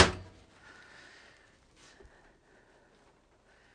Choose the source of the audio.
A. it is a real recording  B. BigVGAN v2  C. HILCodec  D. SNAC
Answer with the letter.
A